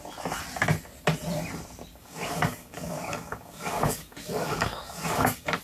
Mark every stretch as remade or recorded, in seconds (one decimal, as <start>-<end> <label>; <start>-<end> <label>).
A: 0.0-2.0 recorded; 2.0-5.6 remade